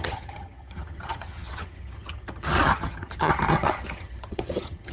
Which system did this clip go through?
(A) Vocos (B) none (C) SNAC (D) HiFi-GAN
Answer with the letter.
D